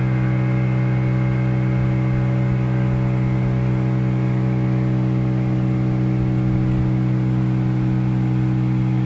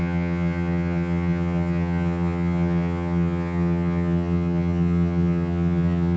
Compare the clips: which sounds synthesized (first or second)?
second